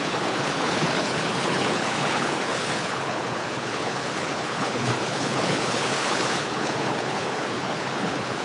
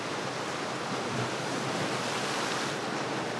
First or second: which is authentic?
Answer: second